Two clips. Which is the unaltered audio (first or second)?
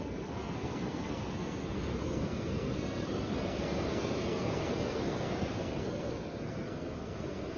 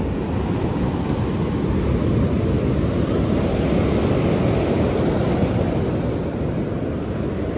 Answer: second